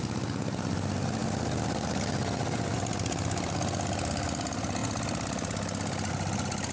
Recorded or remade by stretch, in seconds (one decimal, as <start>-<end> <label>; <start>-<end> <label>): 0.0-6.7 recorded